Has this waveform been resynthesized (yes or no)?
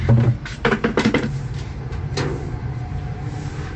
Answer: yes